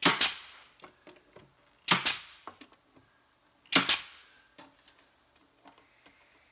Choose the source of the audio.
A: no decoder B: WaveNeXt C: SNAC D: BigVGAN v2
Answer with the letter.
A